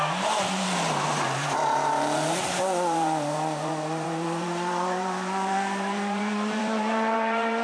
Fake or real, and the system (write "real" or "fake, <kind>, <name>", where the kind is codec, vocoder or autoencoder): fake, vocoder, BigVGAN v2